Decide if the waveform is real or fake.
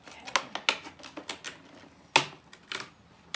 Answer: real